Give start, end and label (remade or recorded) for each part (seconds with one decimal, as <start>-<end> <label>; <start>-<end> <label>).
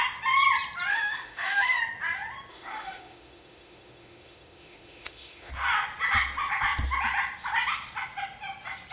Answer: 0.0-0.9 recorded; 0.9-1.8 remade; 1.8-2.5 recorded; 2.5-5.5 remade; 5.5-8.9 recorded